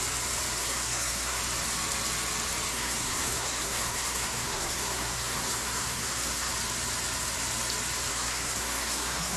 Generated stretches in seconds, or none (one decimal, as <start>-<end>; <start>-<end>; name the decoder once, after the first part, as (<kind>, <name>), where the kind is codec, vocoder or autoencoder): 0.6-1.4 (codec, SNAC); 2.7-6.5; 8.1-9.4